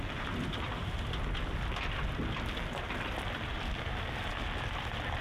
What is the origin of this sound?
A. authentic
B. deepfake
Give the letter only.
A